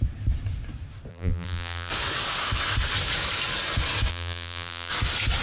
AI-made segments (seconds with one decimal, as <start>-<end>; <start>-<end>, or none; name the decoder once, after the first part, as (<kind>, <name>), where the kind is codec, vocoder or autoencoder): 1.1-1.9 (vocoder, BigVGAN v2); 4.1-4.9